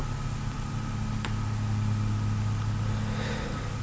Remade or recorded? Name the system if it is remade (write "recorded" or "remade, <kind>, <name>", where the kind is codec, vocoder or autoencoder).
recorded